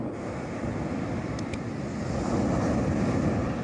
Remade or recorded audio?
recorded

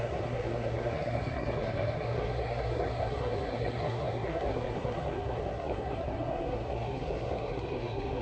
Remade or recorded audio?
remade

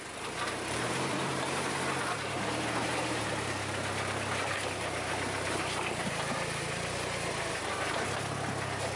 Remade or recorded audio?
remade